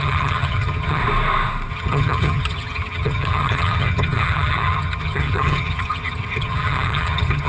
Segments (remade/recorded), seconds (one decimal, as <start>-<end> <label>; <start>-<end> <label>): 0.0-1.0 remade; 1.0-1.7 recorded; 1.7-7.5 remade